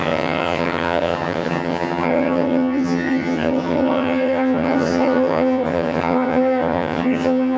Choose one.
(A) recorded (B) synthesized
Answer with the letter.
B